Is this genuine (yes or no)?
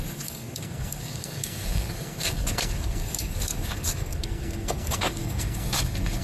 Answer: no